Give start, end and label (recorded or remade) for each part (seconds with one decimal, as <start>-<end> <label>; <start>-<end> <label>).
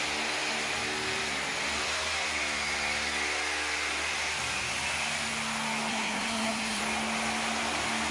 0.0-5.9 recorded; 5.9-6.8 remade; 6.8-8.1 recorded